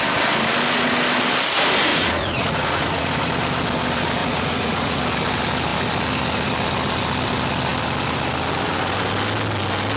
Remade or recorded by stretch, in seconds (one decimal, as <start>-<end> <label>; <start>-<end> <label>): 0.0-1.9 recorded; 1.9-3.3 remade; 3.3-4.2 recorded; 4.2-5.0 remade; 5.0-10.0 recorded